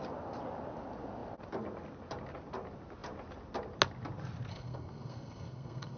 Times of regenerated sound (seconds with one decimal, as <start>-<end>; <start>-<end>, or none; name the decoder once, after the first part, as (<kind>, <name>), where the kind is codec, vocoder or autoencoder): 4.5-6.0 (codec, SNAC)